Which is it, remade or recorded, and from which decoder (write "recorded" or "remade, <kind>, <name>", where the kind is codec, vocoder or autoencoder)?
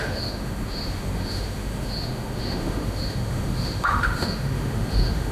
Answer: remade, autoencoder, DAC-VAE